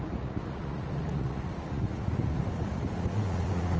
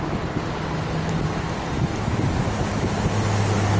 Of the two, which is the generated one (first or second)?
first